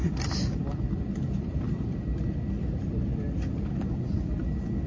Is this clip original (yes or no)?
no